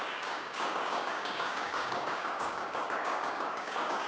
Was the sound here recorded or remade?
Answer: remade